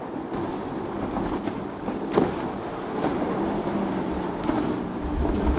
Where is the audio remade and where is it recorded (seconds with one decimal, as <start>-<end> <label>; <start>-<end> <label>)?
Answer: 0.0-5.6 recorded